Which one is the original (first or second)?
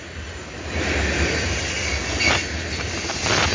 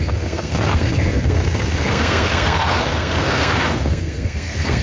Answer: first